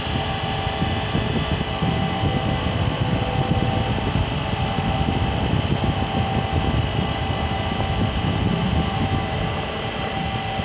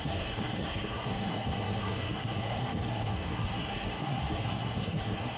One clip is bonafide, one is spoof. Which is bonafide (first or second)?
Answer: first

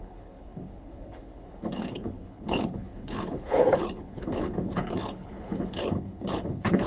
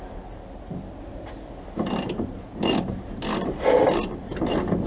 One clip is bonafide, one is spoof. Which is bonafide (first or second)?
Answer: second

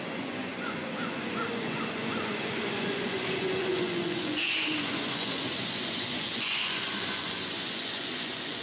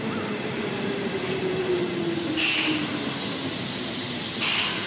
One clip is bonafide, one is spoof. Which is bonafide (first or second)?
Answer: second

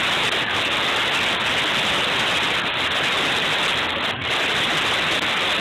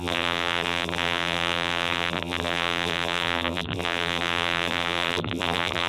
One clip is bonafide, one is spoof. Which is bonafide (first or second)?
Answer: first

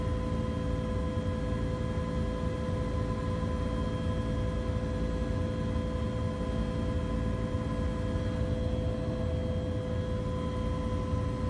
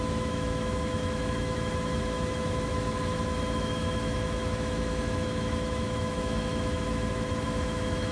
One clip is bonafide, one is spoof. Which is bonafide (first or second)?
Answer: first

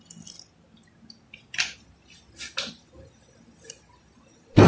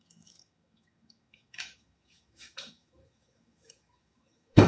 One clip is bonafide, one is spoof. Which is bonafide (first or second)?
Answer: first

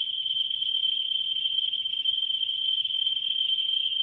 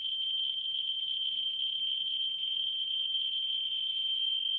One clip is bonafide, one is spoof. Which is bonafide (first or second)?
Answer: second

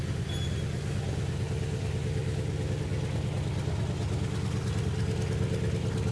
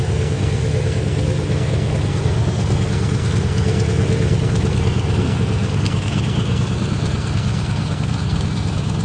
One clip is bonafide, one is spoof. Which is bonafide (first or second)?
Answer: first